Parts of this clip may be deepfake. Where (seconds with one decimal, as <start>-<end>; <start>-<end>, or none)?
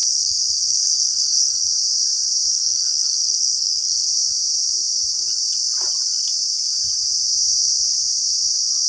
0.0-1.7; 2.5-4.1